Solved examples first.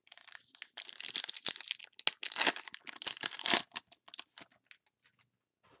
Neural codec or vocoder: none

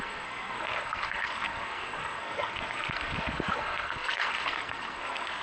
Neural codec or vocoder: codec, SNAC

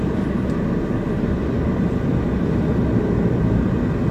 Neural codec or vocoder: none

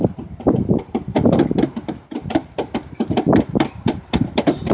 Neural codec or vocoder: vocoder, BigVGAN v2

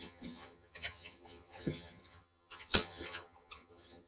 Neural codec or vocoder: vocoder, HiFi-GAN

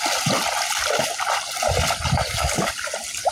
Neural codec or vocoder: none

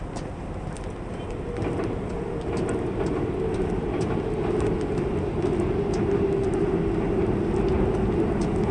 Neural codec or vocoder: none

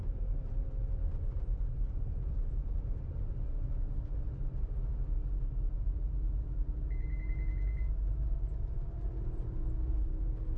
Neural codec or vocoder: vocoder, BigVGAN v2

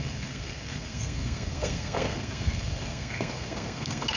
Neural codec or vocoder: codec, SNAC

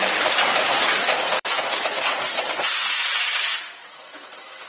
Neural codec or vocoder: vocoder, BigVGAN v2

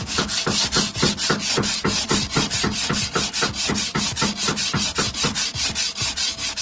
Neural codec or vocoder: none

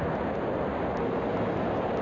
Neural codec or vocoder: none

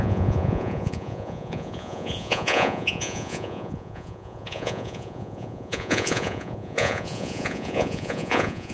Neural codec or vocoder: vocoder, Vocos